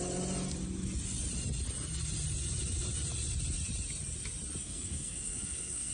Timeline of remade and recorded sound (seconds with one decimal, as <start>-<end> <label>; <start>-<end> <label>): 0.0-4.6 recorded; 4.6-5.9 remade